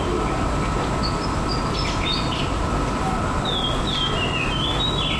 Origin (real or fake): real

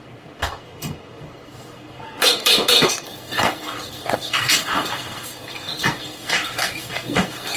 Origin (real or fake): fake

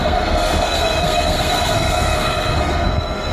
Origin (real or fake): fake